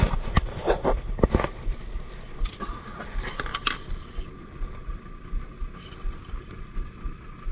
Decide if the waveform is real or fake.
real